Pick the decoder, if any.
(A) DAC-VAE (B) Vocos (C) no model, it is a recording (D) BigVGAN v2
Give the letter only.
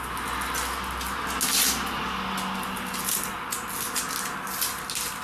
C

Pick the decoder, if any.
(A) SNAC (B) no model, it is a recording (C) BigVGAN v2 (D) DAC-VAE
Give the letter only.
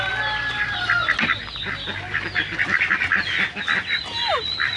B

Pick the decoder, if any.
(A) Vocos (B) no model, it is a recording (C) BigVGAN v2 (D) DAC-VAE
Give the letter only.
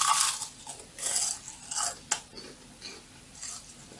B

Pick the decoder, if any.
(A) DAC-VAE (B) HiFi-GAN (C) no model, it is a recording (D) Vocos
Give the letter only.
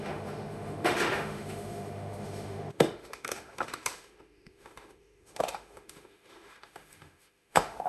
A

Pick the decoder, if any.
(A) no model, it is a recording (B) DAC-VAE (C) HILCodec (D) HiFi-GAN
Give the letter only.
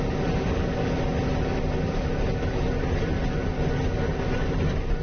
A